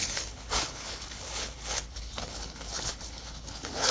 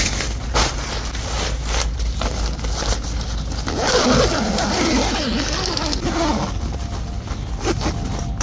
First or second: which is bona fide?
second